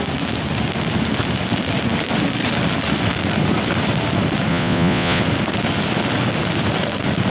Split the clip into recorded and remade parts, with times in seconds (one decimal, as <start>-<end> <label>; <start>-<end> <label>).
0.0-4.5 recorded; 4.5-5.2 remade; 5.2-7.3 recorded